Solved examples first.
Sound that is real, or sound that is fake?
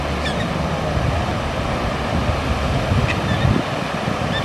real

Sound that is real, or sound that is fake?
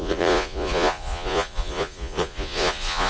fake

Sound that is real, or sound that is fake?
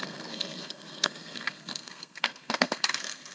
fake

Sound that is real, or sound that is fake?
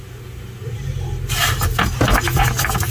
real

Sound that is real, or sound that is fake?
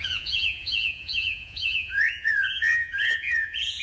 fake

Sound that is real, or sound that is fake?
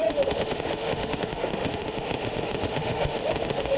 fake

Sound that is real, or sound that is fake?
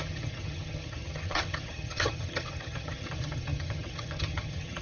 fake